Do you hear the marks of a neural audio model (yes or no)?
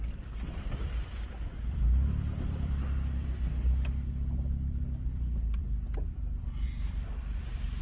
yes